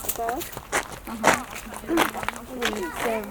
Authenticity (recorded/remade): recorded